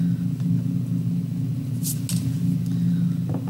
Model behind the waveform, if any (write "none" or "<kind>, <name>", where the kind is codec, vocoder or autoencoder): none